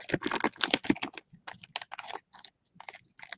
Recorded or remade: recorded